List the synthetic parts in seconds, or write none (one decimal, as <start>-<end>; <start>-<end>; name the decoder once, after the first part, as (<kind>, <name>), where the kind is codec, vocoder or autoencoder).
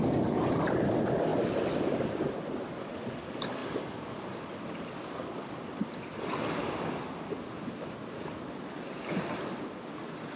none